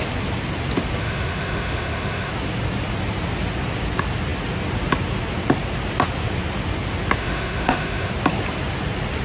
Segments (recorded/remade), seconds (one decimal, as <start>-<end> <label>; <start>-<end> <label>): 0.0-1.0 recorded; 1.0-2.3 remade; 2.3-7.2 recorded; 7.2-8.1 remade; 8.1-9.2 recorded